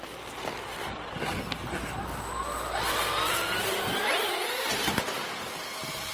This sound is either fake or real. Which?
real